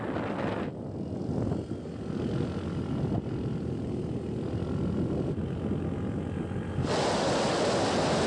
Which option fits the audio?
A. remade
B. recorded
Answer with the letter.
B